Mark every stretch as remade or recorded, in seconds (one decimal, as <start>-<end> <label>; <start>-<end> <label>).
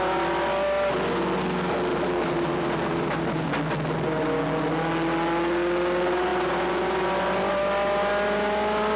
0.0-1.9 recorded; 1.9-3.5 remade; 3.5-9.0 recorded